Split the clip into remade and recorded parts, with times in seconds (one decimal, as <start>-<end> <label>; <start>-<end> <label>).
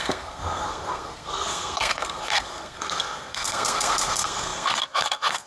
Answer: 0.0-5.5 remade